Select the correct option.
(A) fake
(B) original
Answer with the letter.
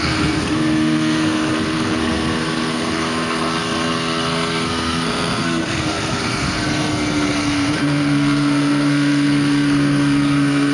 A